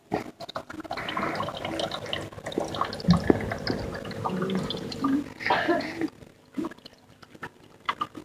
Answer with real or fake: real